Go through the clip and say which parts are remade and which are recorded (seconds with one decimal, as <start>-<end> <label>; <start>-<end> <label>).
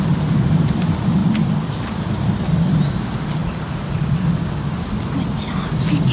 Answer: 0.0-6.1 recorded